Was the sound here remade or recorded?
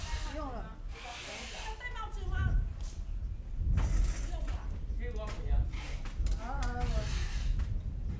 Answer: recorded